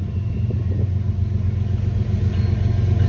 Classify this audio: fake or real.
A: real